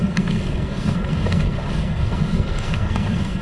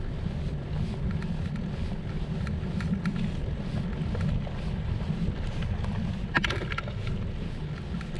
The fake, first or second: first